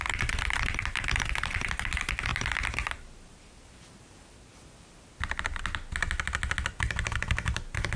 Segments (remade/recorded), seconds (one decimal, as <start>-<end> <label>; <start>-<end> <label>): 0.0-8.0 recorded